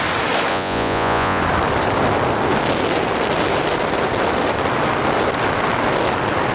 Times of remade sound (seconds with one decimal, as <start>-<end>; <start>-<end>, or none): 0.5-1.4